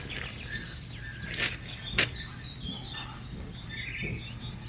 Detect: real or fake real